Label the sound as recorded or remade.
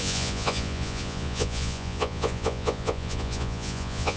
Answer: remade